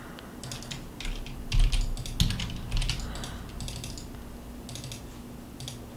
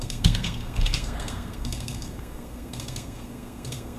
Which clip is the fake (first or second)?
second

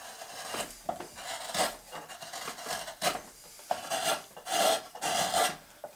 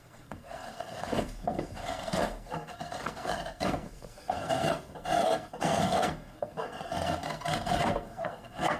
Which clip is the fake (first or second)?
second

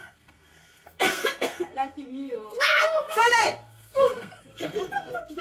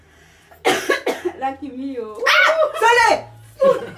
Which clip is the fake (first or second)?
first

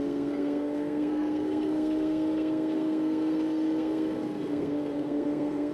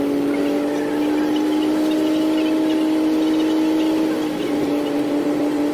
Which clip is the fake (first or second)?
first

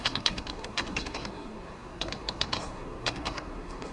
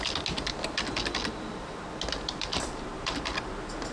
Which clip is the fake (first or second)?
first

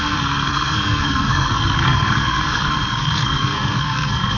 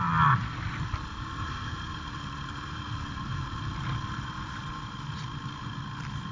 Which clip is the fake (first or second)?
first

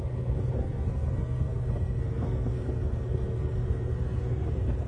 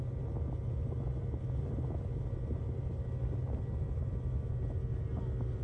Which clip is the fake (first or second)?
first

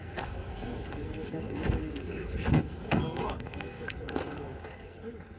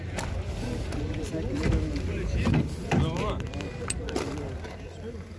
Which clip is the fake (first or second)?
first